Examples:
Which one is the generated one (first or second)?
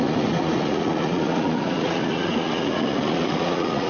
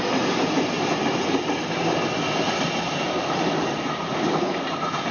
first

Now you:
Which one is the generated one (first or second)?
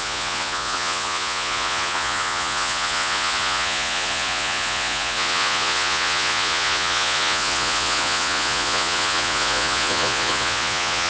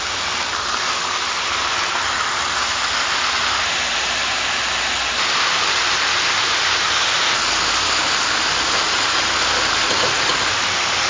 first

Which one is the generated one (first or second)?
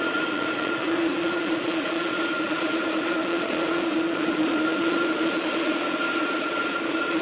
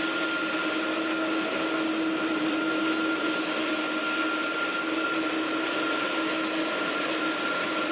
first